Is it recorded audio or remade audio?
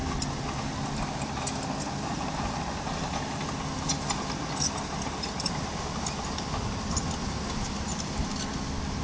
recorded